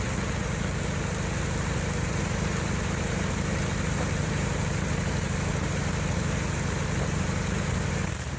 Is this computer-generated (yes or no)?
yes